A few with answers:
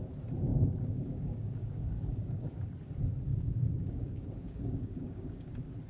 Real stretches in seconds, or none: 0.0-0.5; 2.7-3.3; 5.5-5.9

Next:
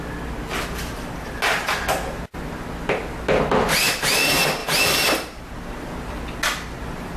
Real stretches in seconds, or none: 0.0-7.2

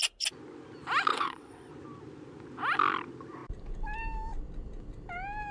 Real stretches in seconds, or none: 0.0-1.1; 1.7-5.5